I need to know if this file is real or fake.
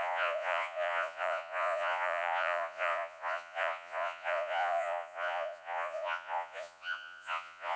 fake